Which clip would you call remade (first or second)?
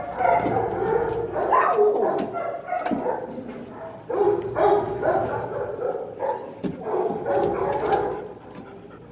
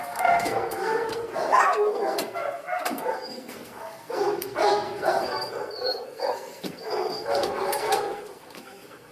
second